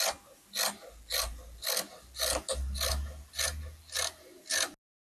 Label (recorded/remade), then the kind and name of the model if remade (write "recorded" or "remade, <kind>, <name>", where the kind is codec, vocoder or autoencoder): recorded